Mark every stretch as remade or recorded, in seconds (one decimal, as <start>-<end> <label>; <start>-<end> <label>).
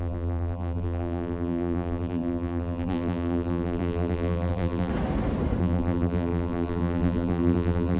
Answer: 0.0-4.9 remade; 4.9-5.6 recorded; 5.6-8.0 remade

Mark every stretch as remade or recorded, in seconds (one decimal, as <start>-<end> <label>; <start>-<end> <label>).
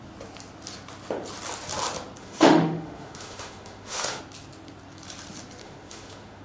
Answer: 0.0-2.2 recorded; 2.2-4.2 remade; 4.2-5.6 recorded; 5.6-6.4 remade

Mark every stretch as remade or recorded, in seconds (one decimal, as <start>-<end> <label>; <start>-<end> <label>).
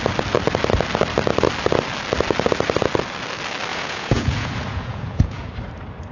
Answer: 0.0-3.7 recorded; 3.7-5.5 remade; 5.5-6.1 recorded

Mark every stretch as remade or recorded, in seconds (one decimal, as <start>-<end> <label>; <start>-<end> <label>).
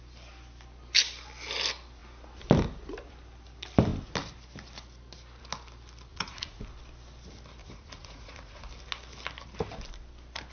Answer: 0.0-6.1 recorded; 6.1-6.6 remade; 6.6-7.6 recorded; 7.6-8.6 remade; 8.6-10.5 recorded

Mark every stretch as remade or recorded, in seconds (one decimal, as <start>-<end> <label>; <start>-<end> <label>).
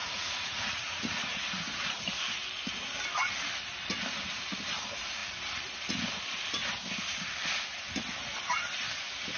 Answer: 0.0-2.0 remade; 2.0-9.4 recorded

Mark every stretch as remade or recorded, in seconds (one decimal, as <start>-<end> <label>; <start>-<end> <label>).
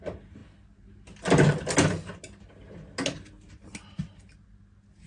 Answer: 0.0-5.1 recorded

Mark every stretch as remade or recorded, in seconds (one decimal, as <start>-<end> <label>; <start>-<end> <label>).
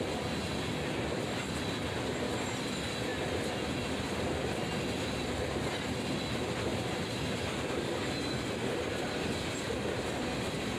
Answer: 0.0-6.7 recorded; 6.7-7.2 remade; 7.2-10.8 recorded